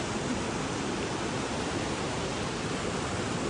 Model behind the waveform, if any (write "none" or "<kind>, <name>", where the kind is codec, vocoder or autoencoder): none